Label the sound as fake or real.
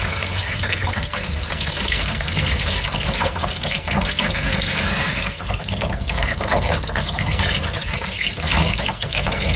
fake